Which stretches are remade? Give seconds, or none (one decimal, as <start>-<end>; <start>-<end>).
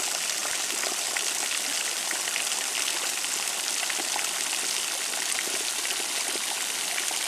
none